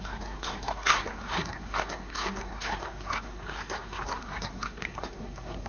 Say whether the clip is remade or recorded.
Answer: remade